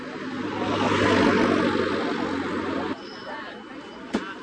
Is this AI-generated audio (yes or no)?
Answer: no